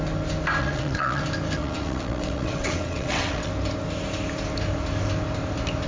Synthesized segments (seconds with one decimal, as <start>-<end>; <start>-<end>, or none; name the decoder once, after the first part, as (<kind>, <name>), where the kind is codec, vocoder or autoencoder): 0.6-1.2 (vocoder, WaveNeXt); 1.6-3.5

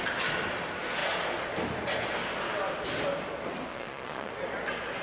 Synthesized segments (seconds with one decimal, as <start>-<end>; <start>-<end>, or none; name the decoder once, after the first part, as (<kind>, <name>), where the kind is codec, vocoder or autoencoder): 3.7-4.3 (vocoder, Vocos)

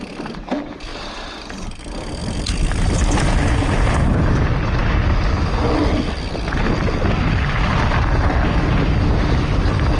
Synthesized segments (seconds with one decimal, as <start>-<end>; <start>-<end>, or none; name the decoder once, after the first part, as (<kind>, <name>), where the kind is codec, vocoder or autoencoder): 0.9-1.8 (vocoder, BigVGAN v2); 2.2-4.2

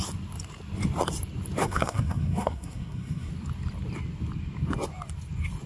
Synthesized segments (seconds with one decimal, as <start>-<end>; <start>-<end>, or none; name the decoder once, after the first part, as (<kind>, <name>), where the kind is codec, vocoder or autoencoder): 1.6-3.3 (codec, SNAC)

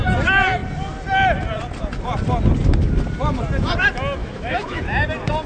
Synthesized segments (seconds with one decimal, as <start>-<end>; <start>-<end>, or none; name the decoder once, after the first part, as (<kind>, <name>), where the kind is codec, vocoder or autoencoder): 4.2-4.8 (autoencoder, DAC-VAE)

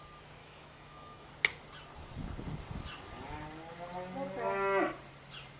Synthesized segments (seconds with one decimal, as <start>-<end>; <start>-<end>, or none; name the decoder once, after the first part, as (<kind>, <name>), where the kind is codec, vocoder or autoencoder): 0.4-1.3 (autoencoder, DAC-VAE)

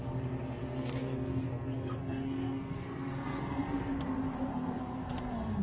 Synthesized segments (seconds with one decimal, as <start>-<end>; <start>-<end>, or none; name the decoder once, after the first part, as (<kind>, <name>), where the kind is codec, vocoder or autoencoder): 0.6-4.0 (codec, SNAC); 4.5-5.6

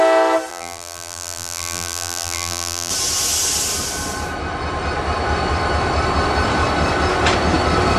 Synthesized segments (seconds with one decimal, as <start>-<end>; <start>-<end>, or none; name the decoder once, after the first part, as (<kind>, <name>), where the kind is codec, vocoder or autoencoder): 0.5-2.9 (vocoder, BigVGAN v2)